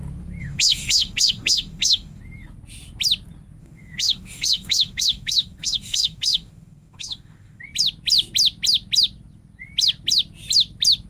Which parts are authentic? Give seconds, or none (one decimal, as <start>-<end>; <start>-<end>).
0.0-0.4; 2.2-3.6; 7.6-11.1